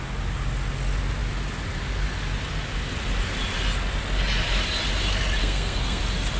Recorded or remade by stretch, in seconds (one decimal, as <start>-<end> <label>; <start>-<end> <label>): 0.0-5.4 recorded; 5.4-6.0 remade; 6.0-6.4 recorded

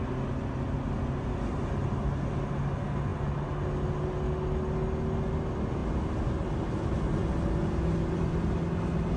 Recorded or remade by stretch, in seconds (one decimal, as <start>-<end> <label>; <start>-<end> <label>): 0.0-9.2 recorded

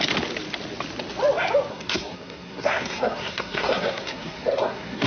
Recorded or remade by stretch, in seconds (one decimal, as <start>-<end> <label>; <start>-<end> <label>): 0.0-1.7 recorded; 1.7-5.1 remade